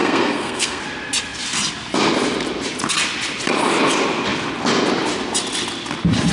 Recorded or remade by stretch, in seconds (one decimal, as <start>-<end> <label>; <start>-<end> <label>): 0.0-0.8 remade; 0.8-6.3 recorded